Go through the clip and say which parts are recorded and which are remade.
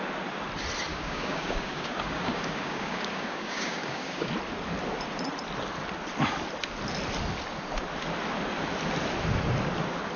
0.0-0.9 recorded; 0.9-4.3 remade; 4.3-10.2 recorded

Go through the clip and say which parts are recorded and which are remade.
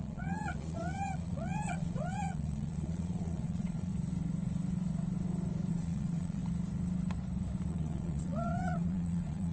0.0-3.9 remade; 3.9-5.7 recorded; 5.7-6.4 remade; 6.4-7.7 recorded; 7.7-9.5 remade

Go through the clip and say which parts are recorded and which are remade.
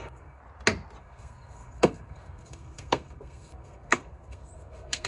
0.0-0.4 remade; 0.4-1.0 recorded; 1.0-5.1 remade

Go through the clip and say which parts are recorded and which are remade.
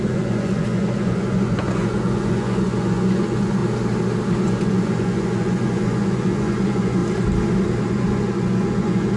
0.0-3.6 remade; 3.6-4.4 recorded; 4.4-7.0 remade; 7.0-7.9 recorded; 7.9-9.2 remade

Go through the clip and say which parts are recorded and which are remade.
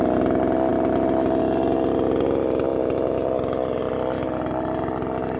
0.0-2.7 recorded; 2.7-3.9 remade; 3.9-5.4 recorded